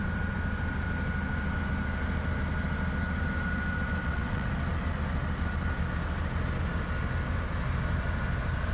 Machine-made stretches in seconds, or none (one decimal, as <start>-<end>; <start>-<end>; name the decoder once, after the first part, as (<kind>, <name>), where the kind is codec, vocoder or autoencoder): 4.0-4.5 (vocoder, WaveNeXt)